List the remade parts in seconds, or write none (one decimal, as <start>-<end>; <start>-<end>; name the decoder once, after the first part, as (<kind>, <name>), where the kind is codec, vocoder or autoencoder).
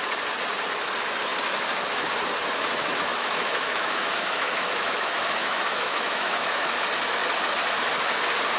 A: 3.1-6.7 (autoencoder, DAC-VAE)